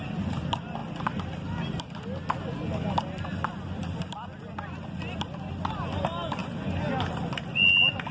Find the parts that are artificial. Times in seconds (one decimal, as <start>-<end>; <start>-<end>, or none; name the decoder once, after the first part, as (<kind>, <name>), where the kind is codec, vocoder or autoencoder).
none